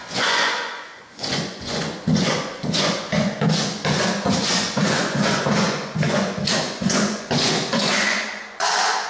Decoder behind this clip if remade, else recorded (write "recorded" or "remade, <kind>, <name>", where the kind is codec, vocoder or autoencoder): remade, vocoder, Vocos